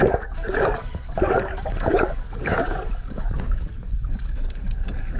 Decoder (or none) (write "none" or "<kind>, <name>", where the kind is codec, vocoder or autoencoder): codec, DAC